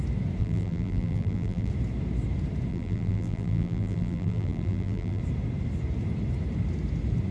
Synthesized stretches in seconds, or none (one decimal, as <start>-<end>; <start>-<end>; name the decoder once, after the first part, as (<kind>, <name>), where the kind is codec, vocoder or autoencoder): 0.4-1.7 (vocoder, BigVGAN v2); 2.7-5.2